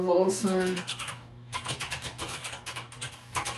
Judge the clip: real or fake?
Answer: fake